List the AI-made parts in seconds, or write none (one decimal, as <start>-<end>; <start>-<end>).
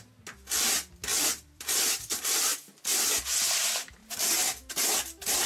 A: 1.1-2.4